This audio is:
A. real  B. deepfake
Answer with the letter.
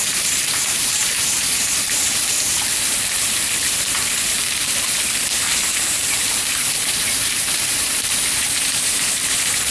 B